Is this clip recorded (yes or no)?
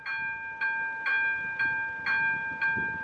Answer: yes